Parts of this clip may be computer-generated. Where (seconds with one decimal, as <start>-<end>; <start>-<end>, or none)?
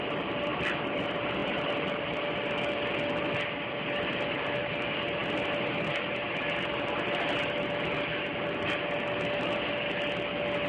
0.5-1.0; 1.4-2.4